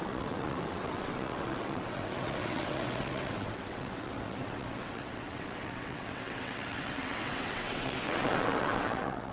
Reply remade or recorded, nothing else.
remade